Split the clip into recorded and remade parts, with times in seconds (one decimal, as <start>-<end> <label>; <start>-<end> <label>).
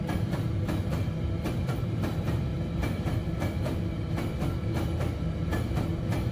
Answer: 0.0-1.0 remade; 1.0-1.5 recorded; 1.5-2.5 remade; 2.5-6.3 recorded